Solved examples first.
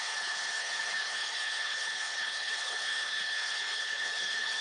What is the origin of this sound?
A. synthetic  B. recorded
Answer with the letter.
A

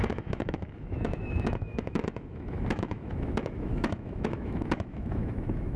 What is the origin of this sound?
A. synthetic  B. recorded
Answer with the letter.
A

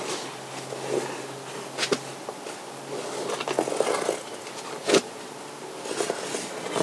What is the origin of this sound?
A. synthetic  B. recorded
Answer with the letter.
B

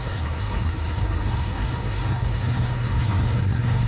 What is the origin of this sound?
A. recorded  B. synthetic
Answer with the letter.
B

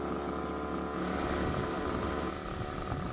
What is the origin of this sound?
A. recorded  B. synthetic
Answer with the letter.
A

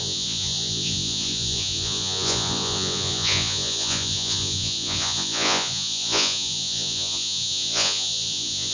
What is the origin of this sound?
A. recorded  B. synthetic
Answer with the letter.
B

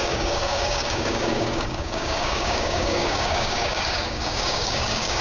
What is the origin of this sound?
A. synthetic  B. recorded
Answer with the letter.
A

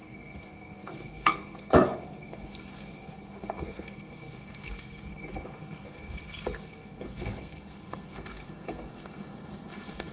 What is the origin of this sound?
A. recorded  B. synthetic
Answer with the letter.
B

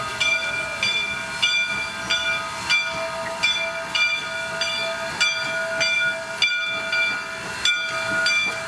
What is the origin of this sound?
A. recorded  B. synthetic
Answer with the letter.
A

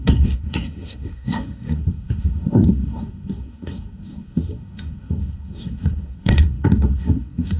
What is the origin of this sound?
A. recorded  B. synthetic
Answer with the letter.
B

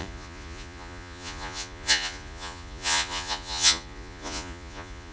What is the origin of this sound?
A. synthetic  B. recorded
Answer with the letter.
A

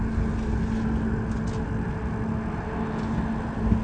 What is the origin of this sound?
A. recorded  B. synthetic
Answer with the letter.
A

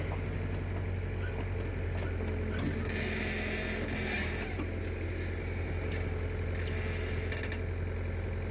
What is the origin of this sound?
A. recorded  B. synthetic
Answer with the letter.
A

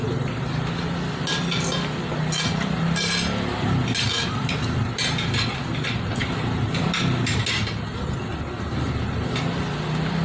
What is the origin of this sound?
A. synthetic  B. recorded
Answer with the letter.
B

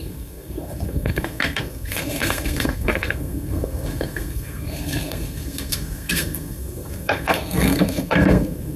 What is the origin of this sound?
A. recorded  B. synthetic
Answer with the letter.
B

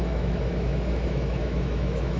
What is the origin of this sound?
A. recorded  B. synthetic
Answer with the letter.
B